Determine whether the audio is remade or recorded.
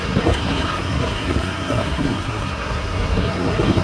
remade